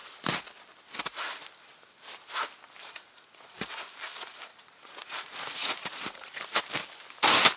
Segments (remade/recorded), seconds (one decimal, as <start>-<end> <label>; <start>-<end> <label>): 0.0-2.8 recorded; 2.8-3.7 remade; 3.7-4.5 recorded; 4.5-6.6 remade; 6.6-7.6 recorded